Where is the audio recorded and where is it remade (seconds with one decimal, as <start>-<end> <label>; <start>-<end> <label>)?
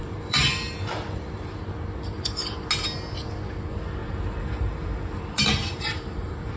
0.0-1.6 remade; 1.6-4.0 recorded; 4.0-6.6 remade